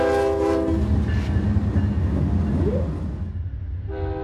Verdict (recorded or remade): recorded